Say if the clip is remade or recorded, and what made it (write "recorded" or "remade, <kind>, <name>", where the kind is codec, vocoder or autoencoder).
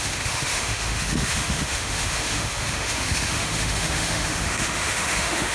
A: remade, autoencoder, DAC-VAE